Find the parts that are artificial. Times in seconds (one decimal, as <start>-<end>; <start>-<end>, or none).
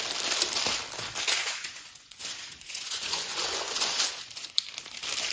1.4-4.6